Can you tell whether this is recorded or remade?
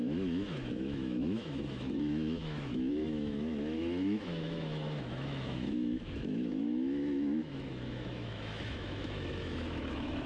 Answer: remade